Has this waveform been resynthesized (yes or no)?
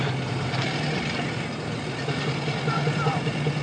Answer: no